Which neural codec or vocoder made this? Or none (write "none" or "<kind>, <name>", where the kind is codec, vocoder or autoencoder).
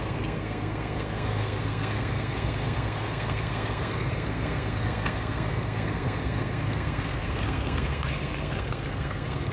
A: codec, SNAC